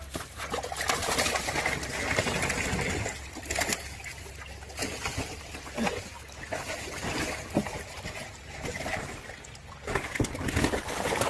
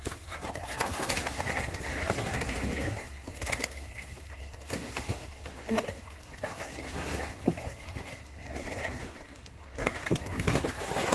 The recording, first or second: first